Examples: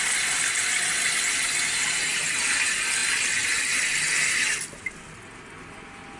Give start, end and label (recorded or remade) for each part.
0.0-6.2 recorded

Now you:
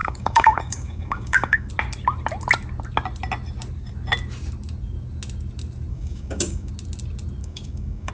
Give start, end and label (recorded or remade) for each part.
0.0-1.7 remade; 1.7-5.9 recorded; 5.9-6.7 remade; 6.7-7.4 recorded; 7.4-8.1 remade

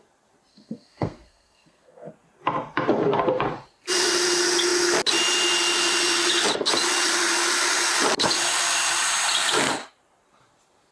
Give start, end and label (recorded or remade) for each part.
0.0-0.5 recorded; 0.5-2.1 remade; 2.1-10.9 recorded